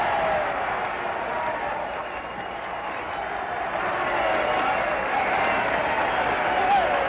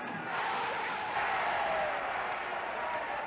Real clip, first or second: first